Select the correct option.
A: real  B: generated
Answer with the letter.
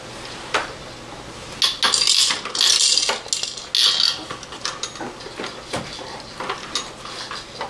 A